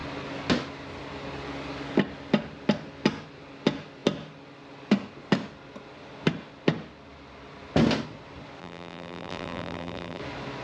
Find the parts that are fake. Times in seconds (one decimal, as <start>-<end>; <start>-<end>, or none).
8.6-10.2